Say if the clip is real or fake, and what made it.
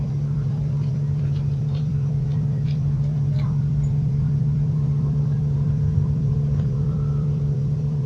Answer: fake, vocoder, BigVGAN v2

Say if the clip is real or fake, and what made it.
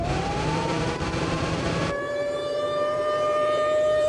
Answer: fake, vocoder, BigVGAN v2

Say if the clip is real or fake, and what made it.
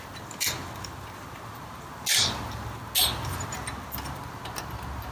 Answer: real